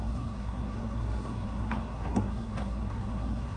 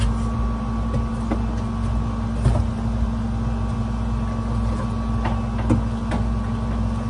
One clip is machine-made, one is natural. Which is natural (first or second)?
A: second